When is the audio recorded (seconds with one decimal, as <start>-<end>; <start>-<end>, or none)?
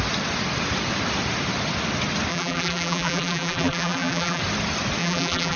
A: 0.0-2.3; 4.4-5.0